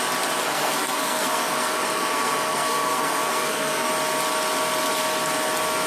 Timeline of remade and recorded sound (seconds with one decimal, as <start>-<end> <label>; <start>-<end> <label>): 0.0-0.4 recorded; 0.4-3.9 remade; 3.9-5.9 recorded